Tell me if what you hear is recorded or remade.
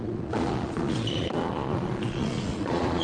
remade